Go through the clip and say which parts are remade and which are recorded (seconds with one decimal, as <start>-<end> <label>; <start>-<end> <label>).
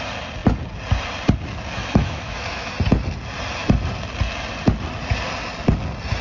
0.0-1.8 recorded; 1.8-2.7 remade; 2.7-6.2 recorded